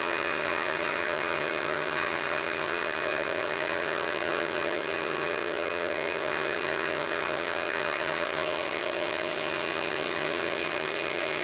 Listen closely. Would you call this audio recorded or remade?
remade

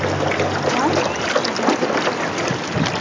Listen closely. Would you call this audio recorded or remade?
recorded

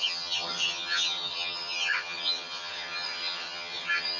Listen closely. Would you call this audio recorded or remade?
remade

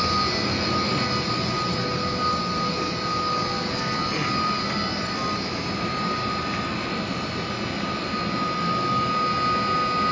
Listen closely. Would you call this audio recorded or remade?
recorded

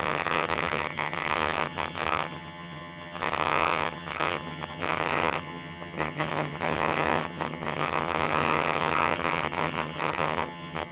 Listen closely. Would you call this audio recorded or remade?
remade